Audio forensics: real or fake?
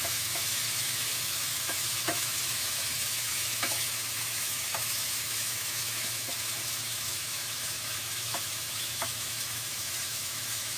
fake